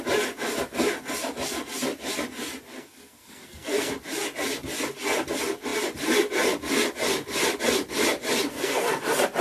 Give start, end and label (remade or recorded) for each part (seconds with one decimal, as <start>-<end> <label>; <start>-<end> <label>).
0.0-2.7 recorded; 2.7-3.9 remade; 3.9-8.5 recorded; 8.5-9.0 remade; 9.0-9.4 recorded

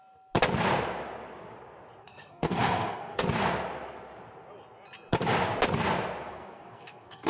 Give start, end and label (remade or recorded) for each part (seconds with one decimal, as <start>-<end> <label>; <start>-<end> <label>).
0.0-2.0 recorded; 2.0-3.2 remade; 3.2-6.3 recorded; 6.3-7.3 remade

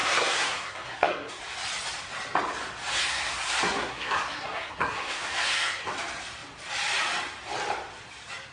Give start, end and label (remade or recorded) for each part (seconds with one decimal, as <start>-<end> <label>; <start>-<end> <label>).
0.0-1.4 remade; 1.4-2.9 recorded; 2.9-5.9 remade; 5.9-8.5 recorded

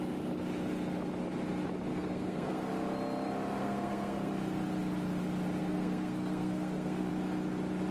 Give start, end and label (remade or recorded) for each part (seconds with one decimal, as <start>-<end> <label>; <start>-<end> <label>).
0.0-1.9 recorded; 1.9-2.7 remade; 2.7-3.6 recorded; 3.6-4.3 remade; 4.3-5.6 recorded; 5.6-7.1 remade; 7.1-7.9 recorded

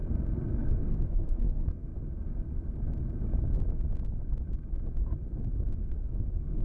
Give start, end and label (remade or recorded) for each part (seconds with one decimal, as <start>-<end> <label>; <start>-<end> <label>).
0.0-0.5 recorded; 0.5-1.9 remade; 1.9-5.9 recorded; 5.9-6.6 remade

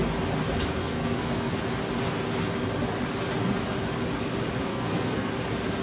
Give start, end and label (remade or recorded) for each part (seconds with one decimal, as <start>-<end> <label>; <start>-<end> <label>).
0.0-0.8 recorded; 0.8-1.6 remade; 1.6-4.7 recorded; 4.7-5.3 remade; 5.3-5.8 recorded

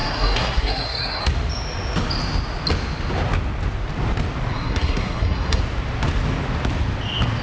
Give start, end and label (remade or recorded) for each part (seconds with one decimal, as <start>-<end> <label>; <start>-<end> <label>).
0.0-1.2 remade; 1.2-4.5 recorded; 4.5-5.6 remade; 5.6-7.4 recorded

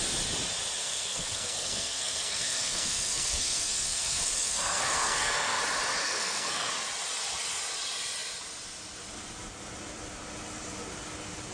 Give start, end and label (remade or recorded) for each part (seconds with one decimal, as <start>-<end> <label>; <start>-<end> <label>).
0.0-0.8 recorded; 0.8-5.6 remade; 5.6-6.0 recorded; 6.0-6.7 remade; 6.7-11.5 recorded